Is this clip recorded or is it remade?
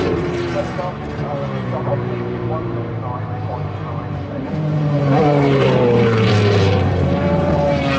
remade